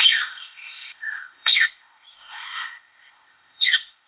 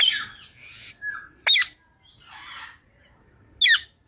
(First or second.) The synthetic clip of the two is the first